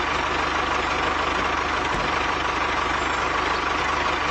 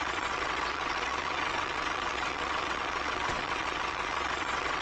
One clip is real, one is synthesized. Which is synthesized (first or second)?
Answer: second